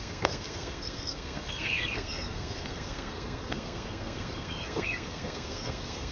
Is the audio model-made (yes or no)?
yes